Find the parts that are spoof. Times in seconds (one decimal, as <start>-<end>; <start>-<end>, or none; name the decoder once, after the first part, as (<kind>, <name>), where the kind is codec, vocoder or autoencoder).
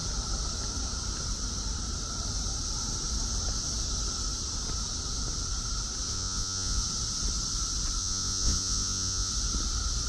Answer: 6.1-6.8 (vocoder, Vocos); 8.0-9.3